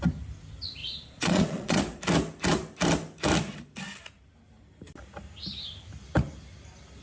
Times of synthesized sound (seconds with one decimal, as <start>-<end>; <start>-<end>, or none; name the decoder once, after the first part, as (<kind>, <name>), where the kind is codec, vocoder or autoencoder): 0.8-1.8 (vocoder, Vocos)